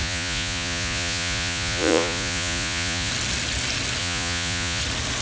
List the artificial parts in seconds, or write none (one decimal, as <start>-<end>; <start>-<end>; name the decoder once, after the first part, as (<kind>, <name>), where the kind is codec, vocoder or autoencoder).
0.0-3.1 (vocoder, Vocos); 4.0-4.8